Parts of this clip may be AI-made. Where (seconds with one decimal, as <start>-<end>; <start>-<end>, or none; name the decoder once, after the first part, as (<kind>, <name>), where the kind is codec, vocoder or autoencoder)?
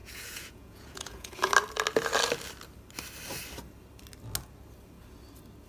0.0-1.5 (vocoder, Vocos)